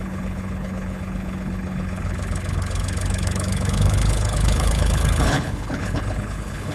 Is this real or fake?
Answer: fake